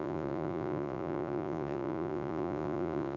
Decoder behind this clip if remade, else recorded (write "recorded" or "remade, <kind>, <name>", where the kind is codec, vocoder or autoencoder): remade, vocoder, Vocos